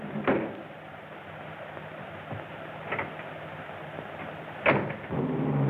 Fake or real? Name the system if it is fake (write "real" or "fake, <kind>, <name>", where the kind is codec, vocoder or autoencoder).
real